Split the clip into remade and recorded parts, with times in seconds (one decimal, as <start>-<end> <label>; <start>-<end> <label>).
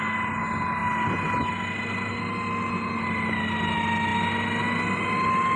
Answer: 0.0-5.6 recorded